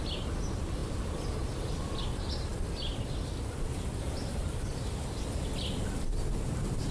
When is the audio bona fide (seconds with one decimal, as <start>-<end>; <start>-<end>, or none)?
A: 0.0-6.9

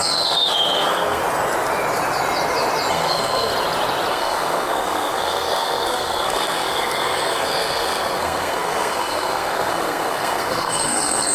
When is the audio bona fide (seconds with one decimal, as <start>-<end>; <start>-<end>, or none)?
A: 1.2-2.9; 3.5-4.1

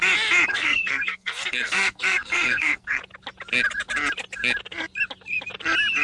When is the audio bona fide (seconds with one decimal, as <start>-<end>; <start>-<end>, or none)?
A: 0.0-0.5; 3.0-6.0

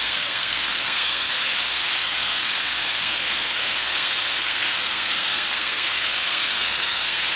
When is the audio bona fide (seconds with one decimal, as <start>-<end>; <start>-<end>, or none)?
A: none

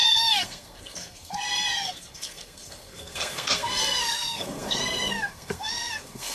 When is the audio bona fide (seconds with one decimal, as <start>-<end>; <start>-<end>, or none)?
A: none

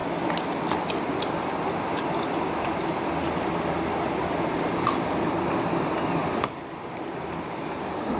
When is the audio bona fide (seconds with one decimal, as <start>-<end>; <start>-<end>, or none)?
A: 0.0-8.2